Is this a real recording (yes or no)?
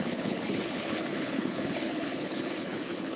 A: no